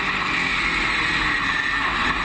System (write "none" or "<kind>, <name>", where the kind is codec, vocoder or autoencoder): none